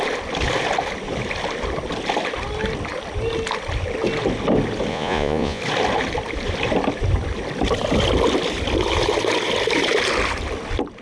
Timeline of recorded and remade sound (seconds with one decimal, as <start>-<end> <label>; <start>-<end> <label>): 0.0-4.9 recorded; 4.9-5.6 remade; 5.6-11.0 recorded